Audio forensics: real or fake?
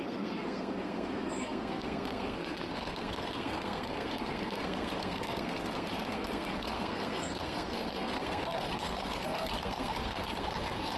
fake